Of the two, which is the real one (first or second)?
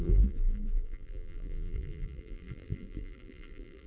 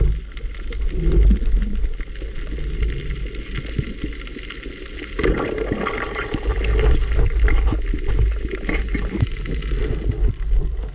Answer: second